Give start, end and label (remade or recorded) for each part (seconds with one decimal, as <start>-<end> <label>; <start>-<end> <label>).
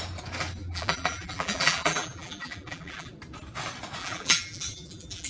0.0-0.6 recorded; 0.6-3.1 remade; 3.1-4.0 recorded; 4.0-5.3 remade